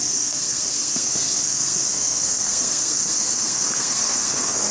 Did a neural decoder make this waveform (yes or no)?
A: yes